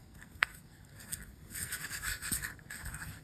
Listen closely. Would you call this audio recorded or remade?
remade